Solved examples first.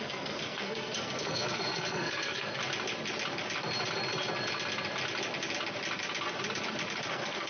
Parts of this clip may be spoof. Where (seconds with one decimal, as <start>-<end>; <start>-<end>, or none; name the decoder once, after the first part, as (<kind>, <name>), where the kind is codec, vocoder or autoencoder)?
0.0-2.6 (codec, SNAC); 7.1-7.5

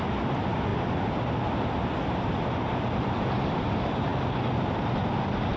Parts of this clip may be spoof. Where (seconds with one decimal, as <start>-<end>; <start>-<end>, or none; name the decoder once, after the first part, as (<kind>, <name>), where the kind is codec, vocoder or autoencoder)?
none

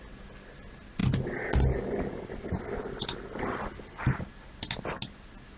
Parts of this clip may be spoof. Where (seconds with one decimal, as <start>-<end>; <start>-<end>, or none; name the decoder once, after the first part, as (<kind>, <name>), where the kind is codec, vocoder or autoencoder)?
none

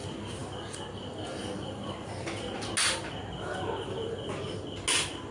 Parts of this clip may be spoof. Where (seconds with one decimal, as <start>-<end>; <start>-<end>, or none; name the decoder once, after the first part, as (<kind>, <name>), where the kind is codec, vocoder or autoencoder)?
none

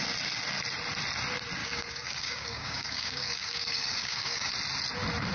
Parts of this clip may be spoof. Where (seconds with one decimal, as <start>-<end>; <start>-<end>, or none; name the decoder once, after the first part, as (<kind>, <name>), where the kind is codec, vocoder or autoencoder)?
1.6-4.5 (codec, DAC)

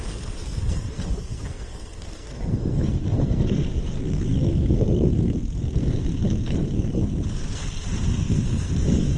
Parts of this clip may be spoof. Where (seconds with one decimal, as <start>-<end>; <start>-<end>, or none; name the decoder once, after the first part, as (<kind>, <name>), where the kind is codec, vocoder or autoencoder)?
0.0-7.6 (codec, SNAC); 8.1-9.2

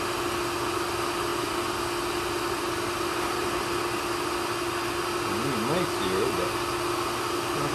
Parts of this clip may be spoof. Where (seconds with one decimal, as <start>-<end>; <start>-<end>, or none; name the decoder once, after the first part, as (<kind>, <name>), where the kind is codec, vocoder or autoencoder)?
none